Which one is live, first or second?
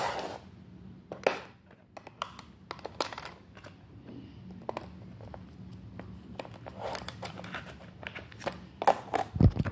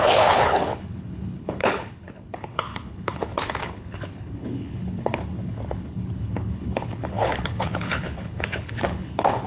first